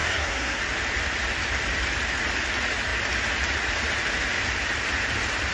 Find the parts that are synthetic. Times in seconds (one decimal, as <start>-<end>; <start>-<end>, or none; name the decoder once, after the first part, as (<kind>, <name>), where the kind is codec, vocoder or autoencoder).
0.0-0.6 (codec, SNAC)